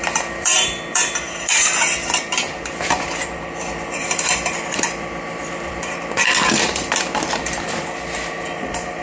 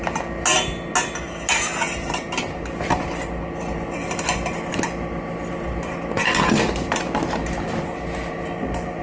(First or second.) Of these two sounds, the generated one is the first